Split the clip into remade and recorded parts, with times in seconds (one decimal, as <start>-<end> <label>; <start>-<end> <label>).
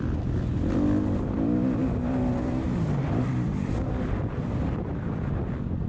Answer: 0.0-1.8 recorded; 1.8-5.3 remade; 5.3-5.9 recorded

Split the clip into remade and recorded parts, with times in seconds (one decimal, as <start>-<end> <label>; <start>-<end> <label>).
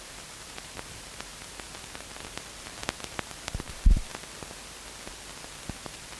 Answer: 0.0-1.3 remade; 1.3-1.8 recorded; 1.8-4.1 remade; 4.1-5.8 recorded; 5.8-6.2 remade